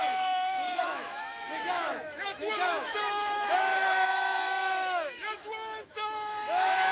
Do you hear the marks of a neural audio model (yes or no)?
yes